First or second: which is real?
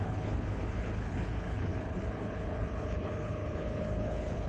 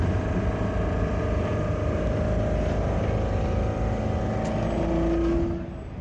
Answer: second